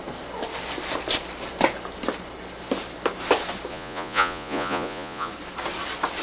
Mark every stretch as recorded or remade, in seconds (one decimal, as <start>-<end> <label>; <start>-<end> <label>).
0.0-3.7 recorded; 3.7-5.3 remade; 5.3-6.2 recorded